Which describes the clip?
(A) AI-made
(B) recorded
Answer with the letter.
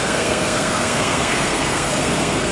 A